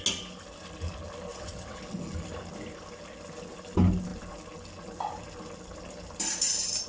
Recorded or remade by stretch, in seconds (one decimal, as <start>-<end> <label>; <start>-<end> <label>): 0.0-1.3 recorded; 1.3-1.8 remade; 1.8-6.9 recorded